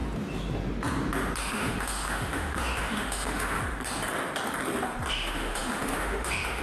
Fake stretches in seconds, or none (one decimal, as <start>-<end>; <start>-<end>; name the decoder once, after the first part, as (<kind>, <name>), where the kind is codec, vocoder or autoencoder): 1.4-3.6 (autoencoder, DAC-VAE); 5.1-6.6